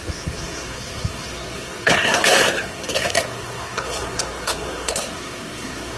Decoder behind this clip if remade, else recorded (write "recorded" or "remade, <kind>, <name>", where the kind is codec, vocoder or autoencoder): remade, codec, SNAC